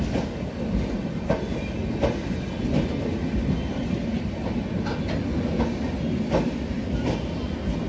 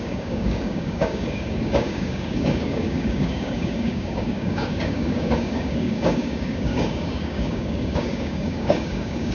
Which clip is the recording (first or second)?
first